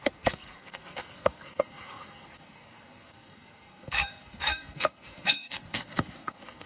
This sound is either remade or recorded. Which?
remade